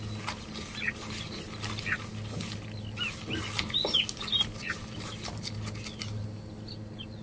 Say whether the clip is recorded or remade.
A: recorded